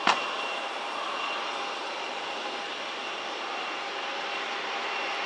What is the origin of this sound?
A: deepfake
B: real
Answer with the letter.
B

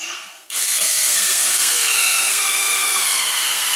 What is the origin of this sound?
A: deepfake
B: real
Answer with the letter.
A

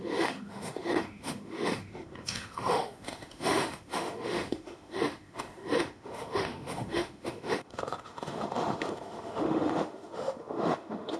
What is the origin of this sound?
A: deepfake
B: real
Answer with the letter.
A